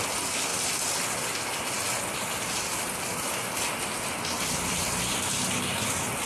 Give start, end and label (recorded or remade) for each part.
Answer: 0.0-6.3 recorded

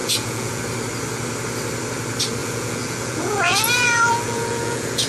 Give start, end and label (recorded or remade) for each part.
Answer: 0.0-0.6 remade; 0.6-2.4 recorded; 2.4-5.1 remade

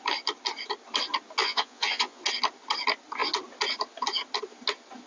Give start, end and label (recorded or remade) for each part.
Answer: 0.0-1.4 recorded; 1.4-2.2 remade; 2.2-5.1 recorded

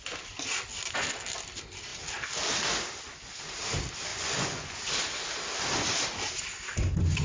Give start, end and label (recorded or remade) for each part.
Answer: 0.0-4.1 recorded; 4.1-4.8 remade; 4.8-7.2 recorded

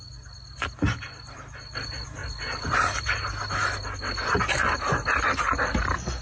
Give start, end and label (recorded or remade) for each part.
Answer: 0.0-6.2 recorded